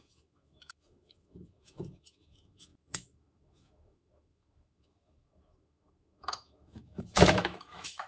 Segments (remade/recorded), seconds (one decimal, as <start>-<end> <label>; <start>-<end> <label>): 0.0-8.1 remade